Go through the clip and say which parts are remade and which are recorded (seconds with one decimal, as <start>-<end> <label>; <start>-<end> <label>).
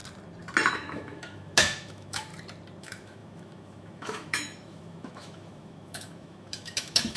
0.0-0.7 recorded; 0.7-2.3 remade; 2.3-2.8 recorded; 2.8-7.2 remade